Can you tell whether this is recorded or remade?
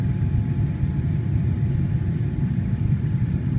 recorded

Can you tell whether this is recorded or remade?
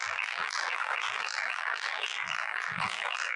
remade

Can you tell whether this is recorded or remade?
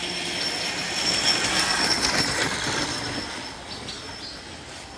recorded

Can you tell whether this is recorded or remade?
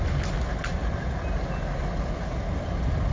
recorded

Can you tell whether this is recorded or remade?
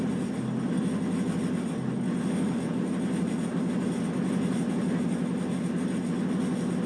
recorded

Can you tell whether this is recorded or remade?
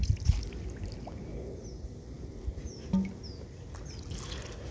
recorded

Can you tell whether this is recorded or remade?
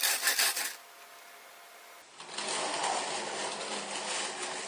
recorded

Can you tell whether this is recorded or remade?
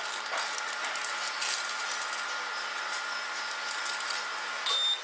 recorded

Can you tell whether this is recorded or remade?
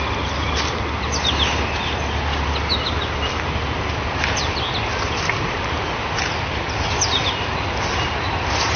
recorded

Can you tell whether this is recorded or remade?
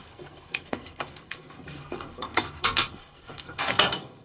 remade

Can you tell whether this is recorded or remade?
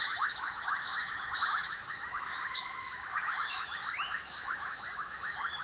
remade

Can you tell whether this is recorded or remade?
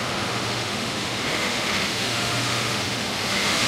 remade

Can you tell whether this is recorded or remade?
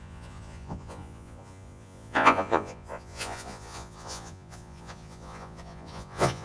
remade